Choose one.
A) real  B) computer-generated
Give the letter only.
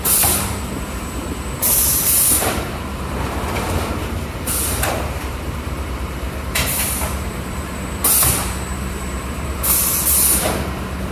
B